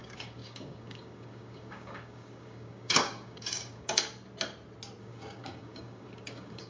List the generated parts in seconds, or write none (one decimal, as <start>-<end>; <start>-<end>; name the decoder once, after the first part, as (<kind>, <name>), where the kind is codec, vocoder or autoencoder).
0.0-4.0 (codec, DAC); 5.0-6.7